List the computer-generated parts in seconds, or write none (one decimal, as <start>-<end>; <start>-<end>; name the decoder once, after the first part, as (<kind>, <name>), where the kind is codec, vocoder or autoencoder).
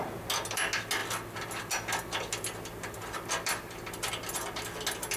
none